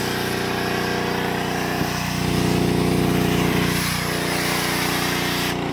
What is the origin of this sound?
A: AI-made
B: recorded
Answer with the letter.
B